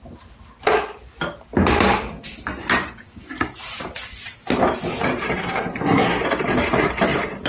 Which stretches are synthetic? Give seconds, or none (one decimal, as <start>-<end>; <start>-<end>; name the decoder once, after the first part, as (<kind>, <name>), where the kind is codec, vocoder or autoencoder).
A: 5.4-6.2 (codec, SNAC)